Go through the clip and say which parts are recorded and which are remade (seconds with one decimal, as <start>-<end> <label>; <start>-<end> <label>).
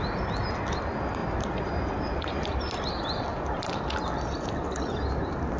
0.0-1.2 recorded; 1.2-2.3 remade; 2.3-3.3 recorded; 3.3-3.8 remade; 3.8-5.6 recorded